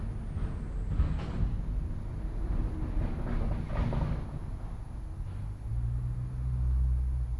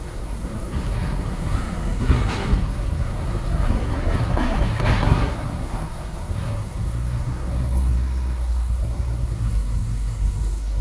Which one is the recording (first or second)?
first